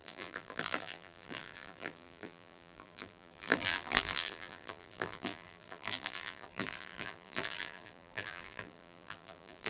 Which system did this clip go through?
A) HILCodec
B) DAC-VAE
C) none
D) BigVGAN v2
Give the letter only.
D